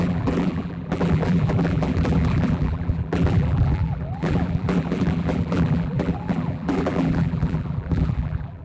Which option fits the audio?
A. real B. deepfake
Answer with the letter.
B